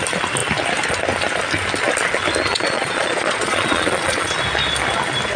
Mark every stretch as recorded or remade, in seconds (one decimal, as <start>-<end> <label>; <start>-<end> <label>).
0.0-2.5 recorded; 2.5-4.3 remade; 4.3-5.4 recorded